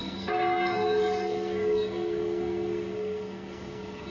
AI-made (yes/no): yes